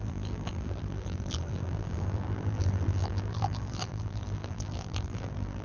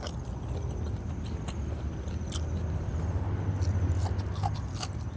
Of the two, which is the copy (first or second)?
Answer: first